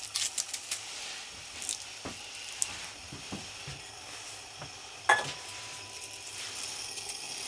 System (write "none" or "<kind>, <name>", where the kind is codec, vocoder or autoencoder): none